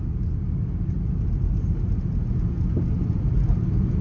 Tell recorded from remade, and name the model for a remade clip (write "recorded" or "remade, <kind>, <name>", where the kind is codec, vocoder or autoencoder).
recorded